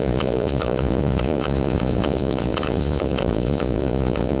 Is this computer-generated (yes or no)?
yes